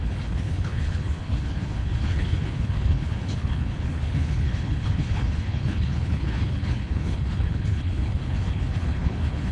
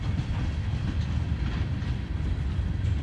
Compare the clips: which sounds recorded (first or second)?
second